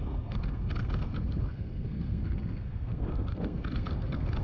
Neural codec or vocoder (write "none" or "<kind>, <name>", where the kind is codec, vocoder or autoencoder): codec, SNAC